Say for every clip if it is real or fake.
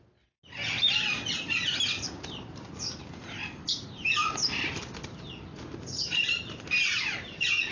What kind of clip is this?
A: real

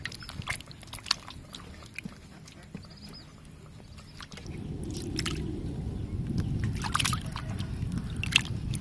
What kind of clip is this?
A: real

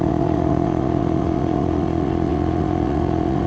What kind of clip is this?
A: fake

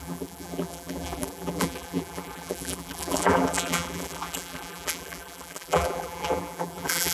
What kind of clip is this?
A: fake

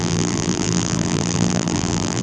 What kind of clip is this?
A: fake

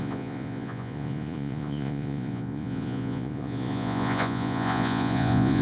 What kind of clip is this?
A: fake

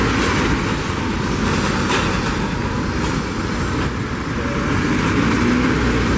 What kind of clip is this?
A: real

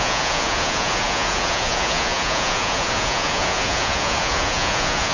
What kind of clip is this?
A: fake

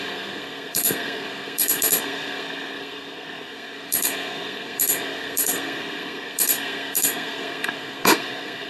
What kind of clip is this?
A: fake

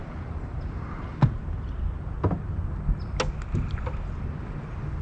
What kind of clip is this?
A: real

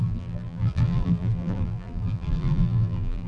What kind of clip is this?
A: fake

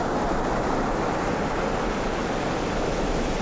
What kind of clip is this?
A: real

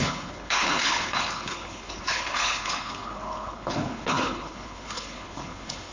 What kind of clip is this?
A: fake